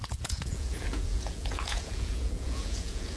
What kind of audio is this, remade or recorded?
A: remade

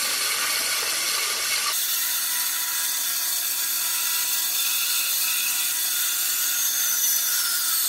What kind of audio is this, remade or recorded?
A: recorded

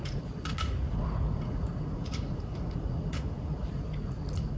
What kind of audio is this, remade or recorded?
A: remade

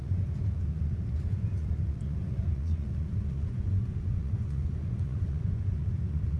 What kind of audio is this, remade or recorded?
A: remade